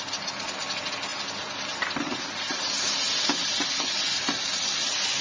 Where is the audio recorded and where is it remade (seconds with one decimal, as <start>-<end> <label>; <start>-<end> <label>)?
0.0-5.2 recorded